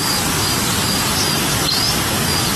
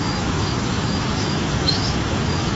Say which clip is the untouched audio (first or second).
first